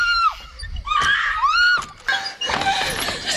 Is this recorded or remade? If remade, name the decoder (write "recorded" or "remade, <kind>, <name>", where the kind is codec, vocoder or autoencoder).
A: recorded